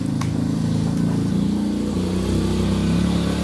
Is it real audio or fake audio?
real